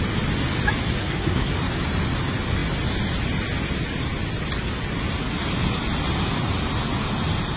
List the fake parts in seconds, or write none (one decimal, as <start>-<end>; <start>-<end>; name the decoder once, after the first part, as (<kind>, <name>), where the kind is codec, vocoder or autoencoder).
1.0-1.5 (codec, SNAC)